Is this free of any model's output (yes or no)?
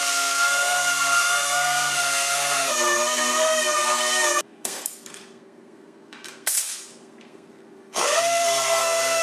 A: no